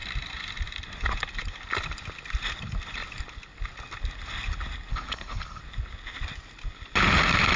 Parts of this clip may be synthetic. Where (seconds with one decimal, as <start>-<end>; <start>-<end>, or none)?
4.9-5.6